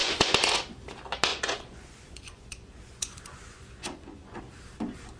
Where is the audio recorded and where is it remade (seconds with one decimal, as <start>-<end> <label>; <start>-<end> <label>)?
0.0-0.6 remade; 0.6-1.3 recorded; 1.3-4.4 remade; 4.4-5.2 recorded